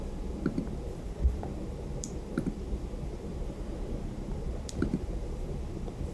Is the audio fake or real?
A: fake